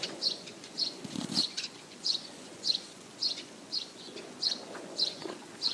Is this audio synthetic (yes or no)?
yes